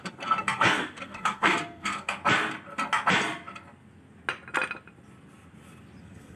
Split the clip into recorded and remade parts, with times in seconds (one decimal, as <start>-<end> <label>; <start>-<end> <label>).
0.0-2.2 remade; 2.2-6.0 recorded; 6.0-6.4 remade